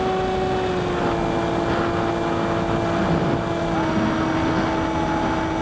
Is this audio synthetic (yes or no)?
no